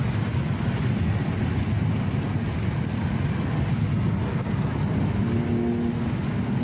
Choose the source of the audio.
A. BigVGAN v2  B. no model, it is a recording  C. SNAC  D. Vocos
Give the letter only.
B